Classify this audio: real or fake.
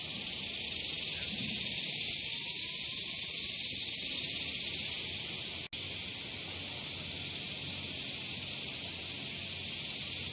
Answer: real